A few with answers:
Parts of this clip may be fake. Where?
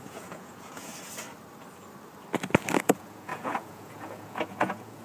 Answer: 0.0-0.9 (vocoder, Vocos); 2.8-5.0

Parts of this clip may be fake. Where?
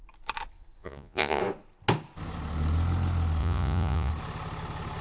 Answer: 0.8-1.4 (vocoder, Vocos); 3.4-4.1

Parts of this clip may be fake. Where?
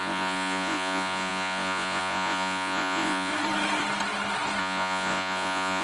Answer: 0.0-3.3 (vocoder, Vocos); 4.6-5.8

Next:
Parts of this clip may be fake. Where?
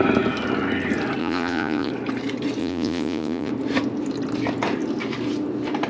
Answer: 1.2-1.9 (vocoder, Vocos); 2.6-3.5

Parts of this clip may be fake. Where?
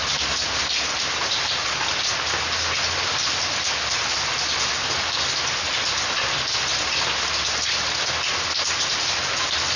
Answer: none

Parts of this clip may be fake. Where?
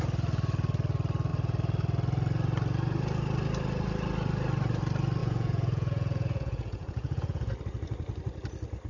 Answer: 5.2-7.5 (vocoder, Vocos)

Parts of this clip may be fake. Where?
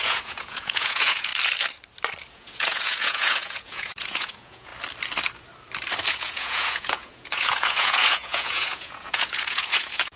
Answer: 0.0-1.3 (vocoder, Vocos); 2.3-4.7; 6.1-10.2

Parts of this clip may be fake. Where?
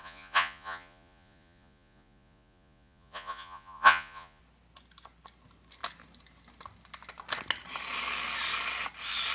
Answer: 0.0-4.4 (vocoder, Vocos)